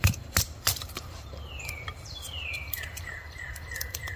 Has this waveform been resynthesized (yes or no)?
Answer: yes